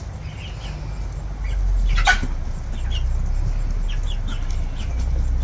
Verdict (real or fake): real